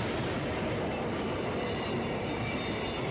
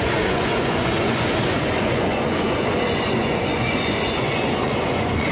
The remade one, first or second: second